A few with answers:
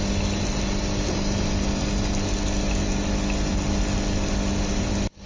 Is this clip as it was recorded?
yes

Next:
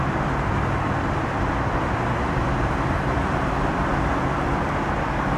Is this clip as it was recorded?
no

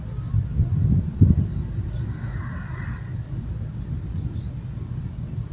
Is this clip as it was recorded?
yes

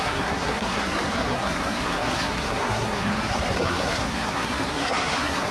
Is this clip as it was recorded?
no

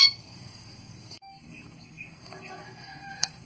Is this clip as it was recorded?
no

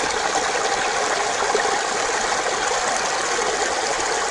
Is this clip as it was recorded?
yes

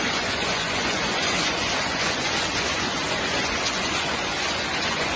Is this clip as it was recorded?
no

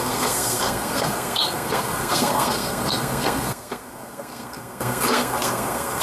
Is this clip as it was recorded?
no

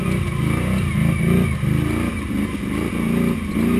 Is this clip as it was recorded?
yes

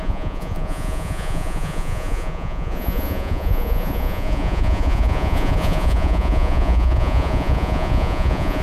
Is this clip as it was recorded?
no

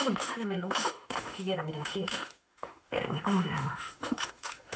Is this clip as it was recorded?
no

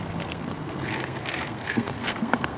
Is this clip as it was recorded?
no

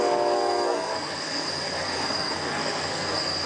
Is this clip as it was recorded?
no